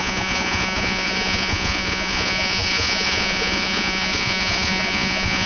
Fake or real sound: fake